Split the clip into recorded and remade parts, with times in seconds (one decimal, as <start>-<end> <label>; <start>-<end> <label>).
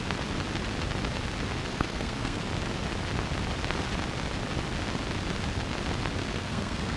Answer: 0.0-1.7 recorded; 1.7-2.4 remade; 2.4-6.2 recorded; 6.2-7.0 remade